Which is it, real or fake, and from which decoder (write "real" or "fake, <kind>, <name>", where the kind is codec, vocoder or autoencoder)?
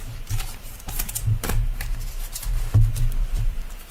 fake, vocoder, BigVGAN v2